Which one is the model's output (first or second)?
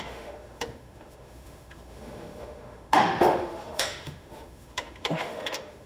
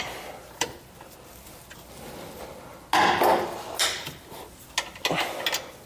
first